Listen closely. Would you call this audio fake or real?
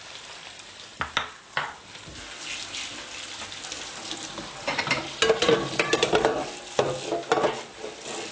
real